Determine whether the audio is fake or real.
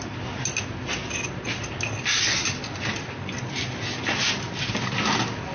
real